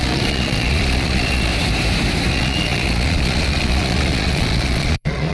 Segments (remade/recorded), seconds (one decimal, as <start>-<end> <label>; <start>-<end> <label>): 0.0-1.5 remade; 1.5-2.3 recorded; 2.3-5.3 remade